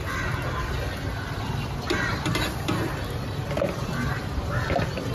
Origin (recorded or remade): recorded